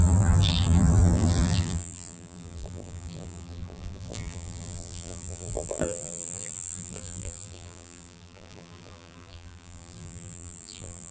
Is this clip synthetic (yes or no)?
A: yes